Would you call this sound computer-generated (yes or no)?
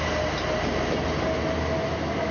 no